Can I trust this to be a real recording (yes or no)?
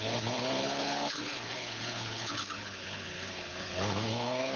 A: no